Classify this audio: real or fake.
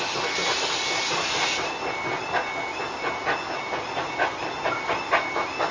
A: real